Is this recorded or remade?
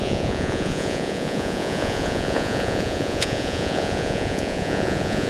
remade